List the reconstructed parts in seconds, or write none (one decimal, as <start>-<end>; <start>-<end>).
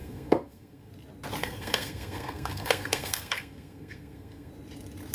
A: 0.0-0.9; 1.4-4.5